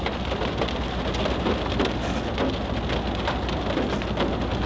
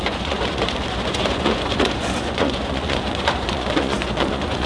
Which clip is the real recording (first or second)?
first